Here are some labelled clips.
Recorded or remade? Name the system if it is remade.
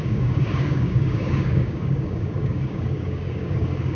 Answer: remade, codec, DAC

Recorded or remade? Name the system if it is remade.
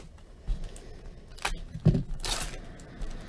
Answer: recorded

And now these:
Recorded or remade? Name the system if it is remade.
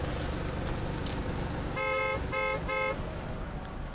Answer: recorded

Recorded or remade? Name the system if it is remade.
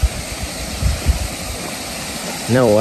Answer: remade, vocoder, BigVGAN v2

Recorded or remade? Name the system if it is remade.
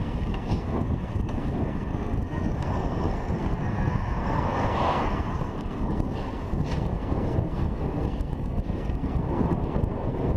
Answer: remade, codec, SNAC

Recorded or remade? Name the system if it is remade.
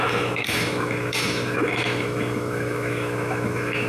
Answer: remade, autoencoder, DAC-VAE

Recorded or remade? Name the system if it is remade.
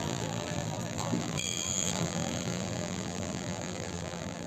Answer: remade, vocoder, BigVGAN v2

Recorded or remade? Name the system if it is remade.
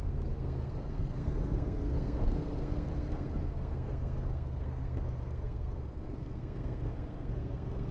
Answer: remade, codec, SNAC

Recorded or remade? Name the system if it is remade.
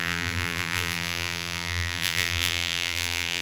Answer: remade, vocoder, BigVGAN v2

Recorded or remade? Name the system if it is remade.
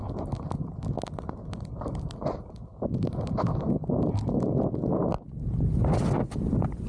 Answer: recorded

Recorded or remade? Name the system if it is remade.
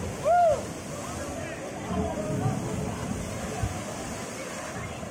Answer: recorded